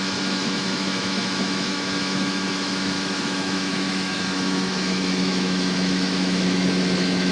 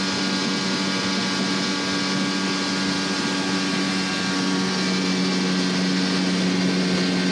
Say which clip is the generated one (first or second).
first